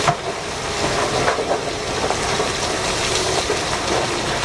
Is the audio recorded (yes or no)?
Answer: no